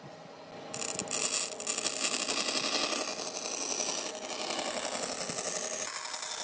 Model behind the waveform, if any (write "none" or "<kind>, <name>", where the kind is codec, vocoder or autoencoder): none